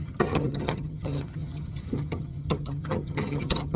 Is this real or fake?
fake